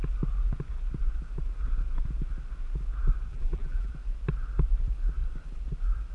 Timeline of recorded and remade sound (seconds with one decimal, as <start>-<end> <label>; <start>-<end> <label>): 0.0-3.3 recorded; 3.3-3.9 remade; 3.9-6.1 recorded